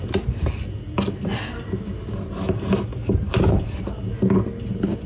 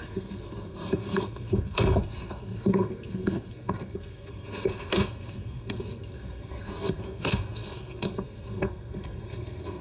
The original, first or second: first